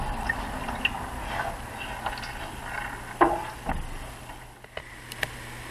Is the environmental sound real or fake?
real